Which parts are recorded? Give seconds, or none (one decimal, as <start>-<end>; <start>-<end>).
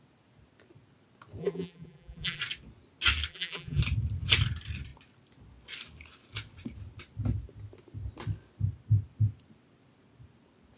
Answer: 0.0-1.4; 2.4-3.3; 3.8-10.8